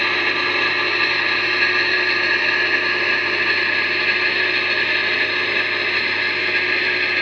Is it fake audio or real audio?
real